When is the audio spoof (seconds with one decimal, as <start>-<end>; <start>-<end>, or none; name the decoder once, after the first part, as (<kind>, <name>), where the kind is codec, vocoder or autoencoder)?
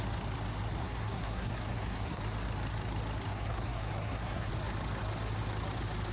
0.8-2.2 (codec, SNAC); 3.3-4.5